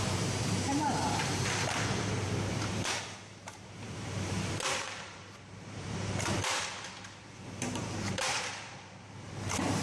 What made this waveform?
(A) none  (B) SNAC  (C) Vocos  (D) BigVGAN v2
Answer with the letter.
D